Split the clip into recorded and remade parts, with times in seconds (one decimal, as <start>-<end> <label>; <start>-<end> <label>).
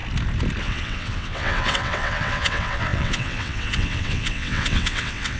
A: 0.0-0.6 recorded; 0.6-5.4 remade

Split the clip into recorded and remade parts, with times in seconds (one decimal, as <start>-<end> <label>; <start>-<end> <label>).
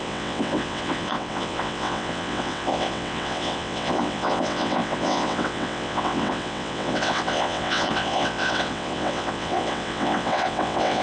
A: 0.0-11.0 remade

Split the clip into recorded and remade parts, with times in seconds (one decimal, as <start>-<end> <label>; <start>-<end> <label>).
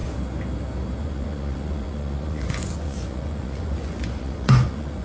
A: 0.0-1.0 recorded; 1.0-5.0 remade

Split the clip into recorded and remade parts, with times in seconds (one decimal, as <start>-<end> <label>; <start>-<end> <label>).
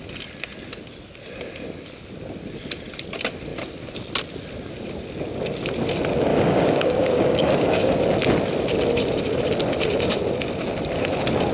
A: 0.0-6.3 recorded; 6.3-7.9 remade; 7.9-11.5 recorded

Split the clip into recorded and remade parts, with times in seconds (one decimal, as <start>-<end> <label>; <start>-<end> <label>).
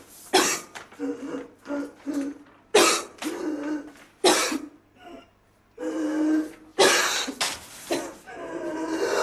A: 0.0-9.2 recorded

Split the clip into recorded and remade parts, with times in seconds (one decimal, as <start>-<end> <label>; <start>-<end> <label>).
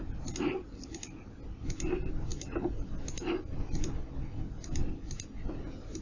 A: 0.0-6.0 recorded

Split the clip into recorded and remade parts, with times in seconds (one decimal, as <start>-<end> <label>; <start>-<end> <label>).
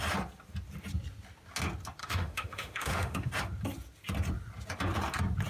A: 0.0-2.0 recorded; 2.0-3.3 remade; 3.3-5.5 recorded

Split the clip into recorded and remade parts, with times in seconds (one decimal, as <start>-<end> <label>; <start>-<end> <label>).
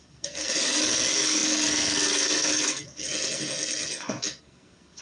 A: 0.0-5.0 remade